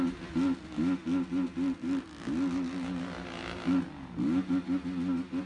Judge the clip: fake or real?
real